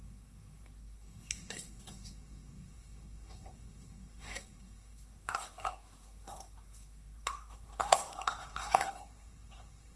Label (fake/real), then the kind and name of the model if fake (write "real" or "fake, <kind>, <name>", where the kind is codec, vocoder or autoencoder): fake, codec, SNAC